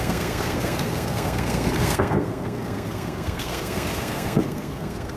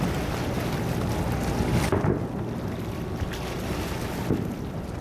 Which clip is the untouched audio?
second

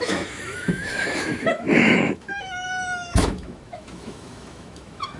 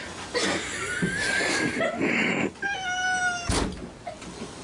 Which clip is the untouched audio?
second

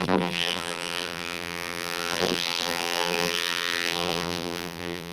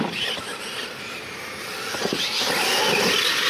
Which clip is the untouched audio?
second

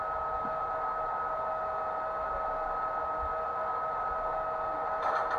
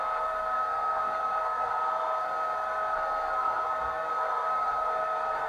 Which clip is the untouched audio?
first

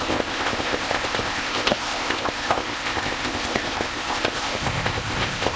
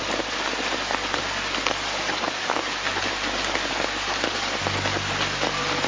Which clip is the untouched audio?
second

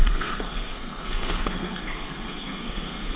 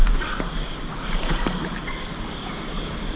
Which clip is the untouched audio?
second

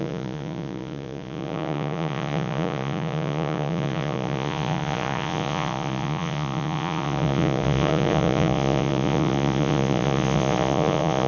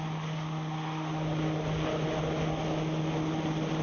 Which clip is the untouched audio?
second